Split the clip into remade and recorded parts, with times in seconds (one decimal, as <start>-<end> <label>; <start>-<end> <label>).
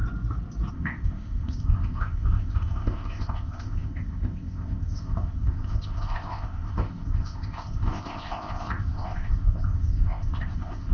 0.0-0.7 recorded; 0.7-10.9 remade